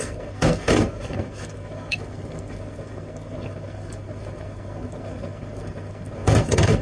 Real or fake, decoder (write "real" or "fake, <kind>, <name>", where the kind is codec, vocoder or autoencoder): fake, codec, SNAC